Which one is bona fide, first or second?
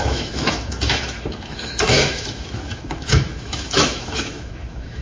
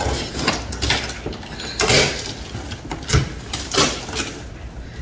second